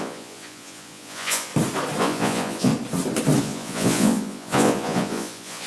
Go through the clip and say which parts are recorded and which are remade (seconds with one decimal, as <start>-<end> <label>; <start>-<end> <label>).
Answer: 0.0-1.5 remade; 1.5-2.0 recorded; 2.0-2.7 remade; 2.7-3.4 recorded; 3.4-5.7 remade